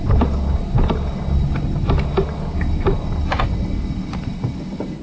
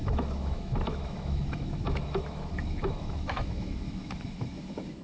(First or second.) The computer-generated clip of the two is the second